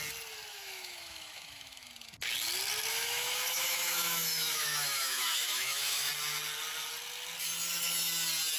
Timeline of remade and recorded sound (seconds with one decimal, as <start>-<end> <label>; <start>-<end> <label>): 0.0-0.5 recorded; 0.5-1.9 remade; 1.9-2.9 recorded; 2.9-6.1 remade; 6.1-8.6 recorded